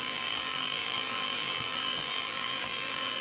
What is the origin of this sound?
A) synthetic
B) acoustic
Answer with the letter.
A